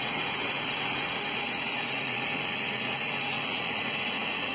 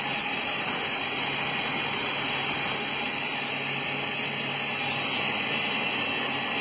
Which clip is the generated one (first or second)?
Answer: first